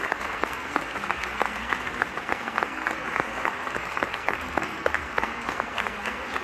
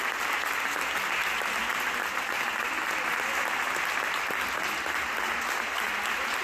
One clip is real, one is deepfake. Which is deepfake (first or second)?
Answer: first